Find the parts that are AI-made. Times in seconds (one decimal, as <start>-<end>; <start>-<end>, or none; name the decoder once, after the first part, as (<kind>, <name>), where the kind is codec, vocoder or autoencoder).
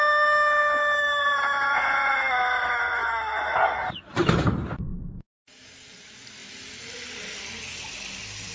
1.2-2.1 (vocoder, Vocos); 4.9-5.7